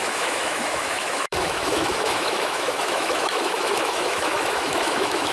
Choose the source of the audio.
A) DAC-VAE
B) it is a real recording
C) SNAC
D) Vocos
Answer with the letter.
A